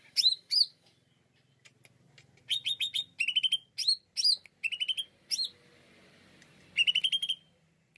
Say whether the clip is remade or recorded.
recorded